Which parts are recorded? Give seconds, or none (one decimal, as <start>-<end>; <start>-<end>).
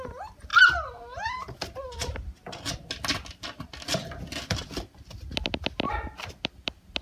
0.0-7.0